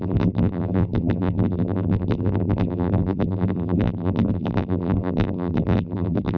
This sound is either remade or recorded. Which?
remade